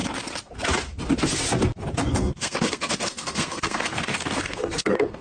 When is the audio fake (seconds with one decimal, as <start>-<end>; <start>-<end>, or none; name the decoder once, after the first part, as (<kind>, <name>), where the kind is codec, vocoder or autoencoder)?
2.1-5.2 (codec, SNAC)